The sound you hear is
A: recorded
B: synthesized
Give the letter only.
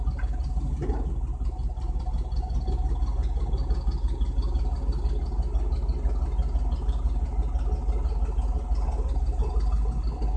A